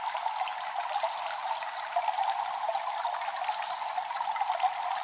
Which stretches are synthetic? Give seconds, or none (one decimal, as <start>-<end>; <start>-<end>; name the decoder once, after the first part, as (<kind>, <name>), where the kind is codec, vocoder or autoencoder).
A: 0.0-0.5 (vocoder, BigVGAN v2); 3.5-5.0